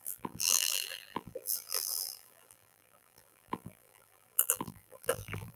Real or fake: fake